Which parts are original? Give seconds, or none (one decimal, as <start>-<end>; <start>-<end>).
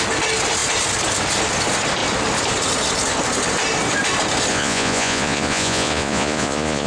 0.0-4.5